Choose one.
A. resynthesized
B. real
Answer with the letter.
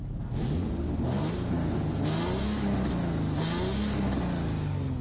B